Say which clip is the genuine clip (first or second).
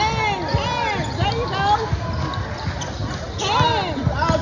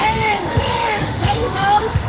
first